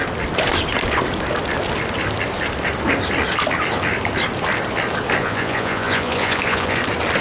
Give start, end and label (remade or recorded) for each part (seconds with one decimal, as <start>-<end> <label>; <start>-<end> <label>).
0.0-5.2 recorded; 5.2-6.8 remade; 6.8-7.2 recorded